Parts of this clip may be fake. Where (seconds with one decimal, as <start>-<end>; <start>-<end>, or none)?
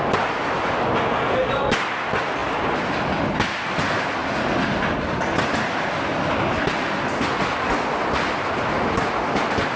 none